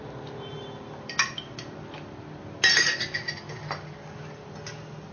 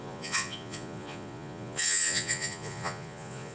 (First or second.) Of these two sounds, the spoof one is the second